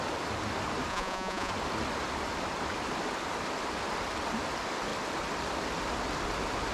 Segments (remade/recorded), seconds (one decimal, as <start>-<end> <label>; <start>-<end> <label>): 0.0-0.9 recorded; 0.9-1.5 remade; 1.5-6.7 recorded